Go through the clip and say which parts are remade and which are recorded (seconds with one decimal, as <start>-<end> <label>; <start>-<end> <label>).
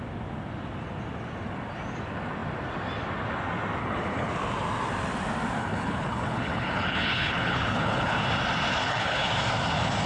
0.0-3.8 recorded; 3.8-4.3 remade; 4.3-5.6 recorded; 5.6-8.2 remade; 8.2-8.8 recorded; 8.8-9.3 remade; 9.3-10.1 recorded